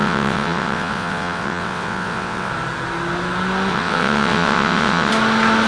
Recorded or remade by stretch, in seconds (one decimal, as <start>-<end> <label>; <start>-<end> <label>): 0.0-2.5 remade; 2.5-3.7 recorded; 3.7-5.1 remade; 5.1-5.7 recorded